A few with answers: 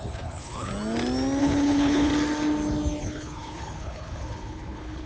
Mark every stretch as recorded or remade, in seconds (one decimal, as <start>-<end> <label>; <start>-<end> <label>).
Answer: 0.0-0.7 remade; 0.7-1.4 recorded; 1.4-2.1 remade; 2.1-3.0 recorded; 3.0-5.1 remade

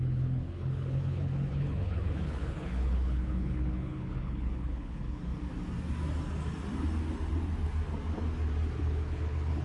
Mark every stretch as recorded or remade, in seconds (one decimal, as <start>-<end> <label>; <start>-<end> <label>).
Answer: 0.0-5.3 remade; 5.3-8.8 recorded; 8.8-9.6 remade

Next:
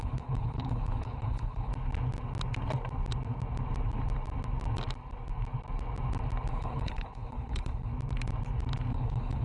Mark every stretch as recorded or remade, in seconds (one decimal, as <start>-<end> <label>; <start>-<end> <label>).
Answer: 0.0-1.7 remade; 1.7-6.5 recorded; 6.5-7.9 remade; 7.9-8.9 recorded; 8.9-9.4 remade

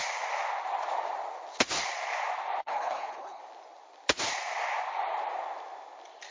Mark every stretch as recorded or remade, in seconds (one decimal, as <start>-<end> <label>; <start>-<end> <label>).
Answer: 0.0-2.6 recorded; 2.6-3.4 remade; 3.4-6.3 recorded

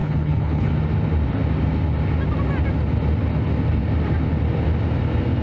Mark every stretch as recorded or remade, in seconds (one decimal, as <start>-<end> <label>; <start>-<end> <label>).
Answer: 0.0-0.7 remade; 0.7-5.4 recorded

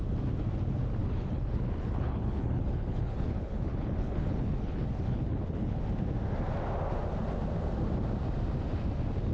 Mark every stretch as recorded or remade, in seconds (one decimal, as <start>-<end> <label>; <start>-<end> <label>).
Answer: 0.0-1.0 recorded; 1.0-5.8 remade; 5.8-9.3 recorded

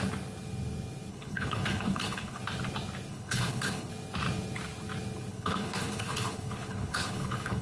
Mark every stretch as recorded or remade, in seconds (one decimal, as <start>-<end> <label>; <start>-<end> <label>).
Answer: 0.0-1.1 recorded; 1.1-2.4 remade; 2.4-3.1 recorded; 3.1-3.9 remade; 3.9-5.3 recorded; 5.3-7.6 remade